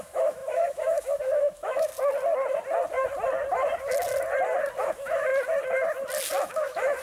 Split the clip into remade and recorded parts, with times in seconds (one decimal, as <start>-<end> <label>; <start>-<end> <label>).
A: 0.0-1.9 remade; 1.9-4.8 recorded; 4.8-5.3 remade; 5.3-6.4 recorded; 6.4-7.0 remade